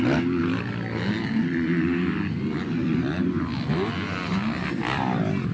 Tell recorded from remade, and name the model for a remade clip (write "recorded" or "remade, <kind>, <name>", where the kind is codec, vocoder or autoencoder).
recorded